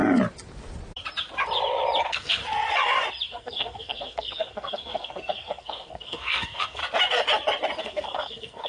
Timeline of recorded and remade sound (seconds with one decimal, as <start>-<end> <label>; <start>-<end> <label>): 0.0-2.0 recorded; 2.0-2.4 remade; 2.4-3.3 recorded; 3.3-6.8 remade; 6.8-7.8 recorded; 7.8-8.7 remade